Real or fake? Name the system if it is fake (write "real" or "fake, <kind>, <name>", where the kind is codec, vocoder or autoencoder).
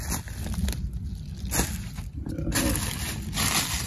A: real